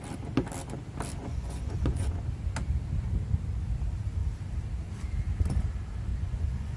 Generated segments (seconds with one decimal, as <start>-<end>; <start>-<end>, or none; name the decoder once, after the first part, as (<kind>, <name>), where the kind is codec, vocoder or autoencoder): 1.2-2.2 (vocoder, Vocos); 6.1-6.8